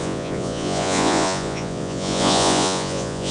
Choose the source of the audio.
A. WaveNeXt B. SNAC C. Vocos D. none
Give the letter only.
C